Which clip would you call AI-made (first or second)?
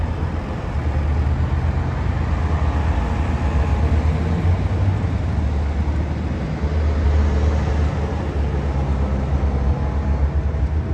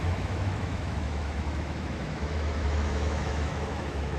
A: second